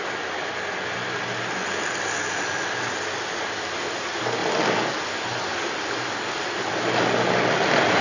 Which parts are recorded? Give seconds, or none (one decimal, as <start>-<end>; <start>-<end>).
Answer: 0.0-8.0